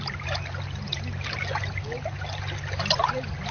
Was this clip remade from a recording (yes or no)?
no